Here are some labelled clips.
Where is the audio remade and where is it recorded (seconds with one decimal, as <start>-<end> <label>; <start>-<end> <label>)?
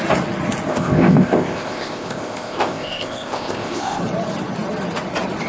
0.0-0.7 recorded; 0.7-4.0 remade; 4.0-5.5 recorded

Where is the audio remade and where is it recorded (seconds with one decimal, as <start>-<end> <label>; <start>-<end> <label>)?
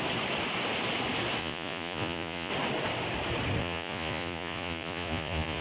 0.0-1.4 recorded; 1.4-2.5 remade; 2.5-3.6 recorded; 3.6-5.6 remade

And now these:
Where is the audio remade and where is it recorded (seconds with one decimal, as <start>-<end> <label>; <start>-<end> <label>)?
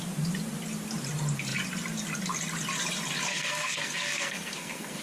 0.0-3.3 recorded; 3.3-5.0 remade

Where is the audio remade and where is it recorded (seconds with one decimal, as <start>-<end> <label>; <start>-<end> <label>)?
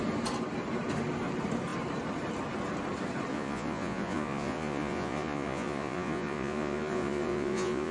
0.0-3.3 recorded; 3.3-7.9 remade